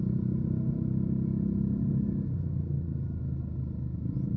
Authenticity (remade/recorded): recorded